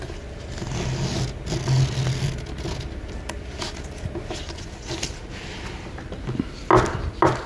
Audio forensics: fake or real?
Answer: real